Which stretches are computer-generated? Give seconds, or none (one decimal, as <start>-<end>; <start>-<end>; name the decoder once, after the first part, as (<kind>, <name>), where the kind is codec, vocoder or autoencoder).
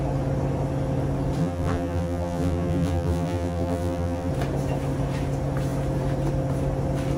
1.4-4.3 (vocoder, BigVGAN v2)